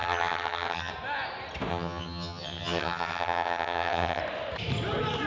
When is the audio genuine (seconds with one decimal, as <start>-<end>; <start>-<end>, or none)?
0.9-1.7; 4.2-5.3